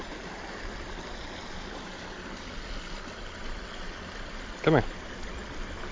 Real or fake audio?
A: real